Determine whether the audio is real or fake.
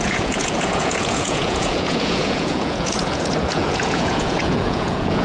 fake